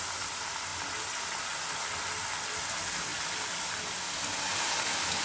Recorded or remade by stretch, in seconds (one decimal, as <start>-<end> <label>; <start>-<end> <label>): 0.0-5.2 recorded